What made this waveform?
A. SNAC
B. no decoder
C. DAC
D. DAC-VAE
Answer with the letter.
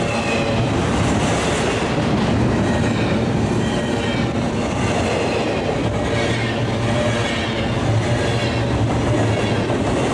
B